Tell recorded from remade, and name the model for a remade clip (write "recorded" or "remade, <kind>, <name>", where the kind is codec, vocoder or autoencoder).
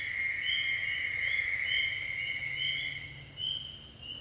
recorded